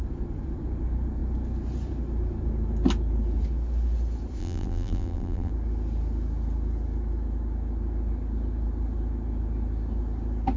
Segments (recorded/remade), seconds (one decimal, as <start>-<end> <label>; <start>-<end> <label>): 0.0-4.4 recorded; 4.4-5.5 remade; 5.5-10.6 recorded